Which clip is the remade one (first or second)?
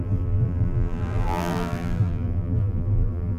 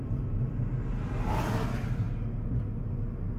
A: first